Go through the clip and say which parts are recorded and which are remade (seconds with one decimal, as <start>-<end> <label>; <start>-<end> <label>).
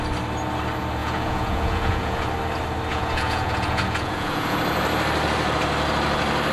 0.0-1.0 recorded; 1.0-2.3 remade; 2.3-2.9 recorded; 2.9-4.6 remade; 4.6-6.5 recorded